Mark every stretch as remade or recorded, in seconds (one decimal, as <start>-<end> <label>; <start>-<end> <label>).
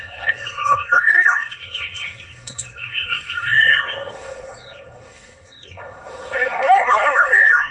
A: 0.0-7.7 remade